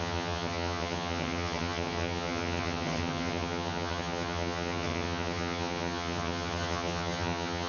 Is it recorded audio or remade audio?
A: remade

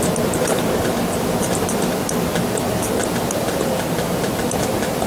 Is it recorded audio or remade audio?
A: recorded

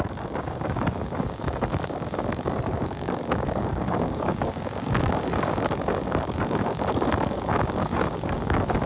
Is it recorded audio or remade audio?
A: remade